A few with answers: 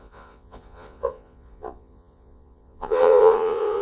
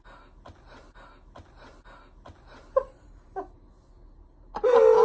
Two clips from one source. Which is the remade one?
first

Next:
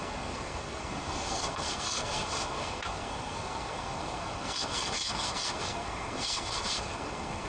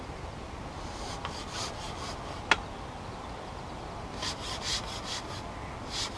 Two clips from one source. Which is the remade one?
first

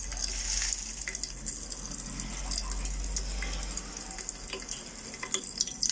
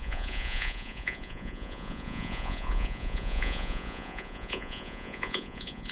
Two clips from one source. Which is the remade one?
second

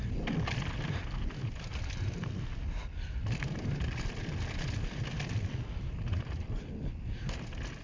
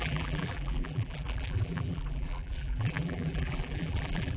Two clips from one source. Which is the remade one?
second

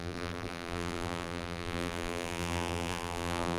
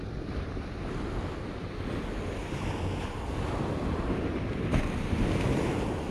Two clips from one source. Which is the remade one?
first